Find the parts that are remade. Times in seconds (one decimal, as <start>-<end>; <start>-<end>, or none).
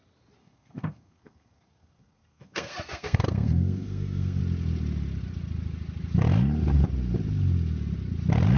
0.4-4.4